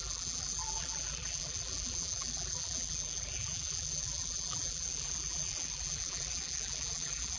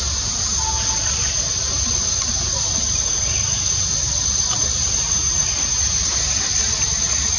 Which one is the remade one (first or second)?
first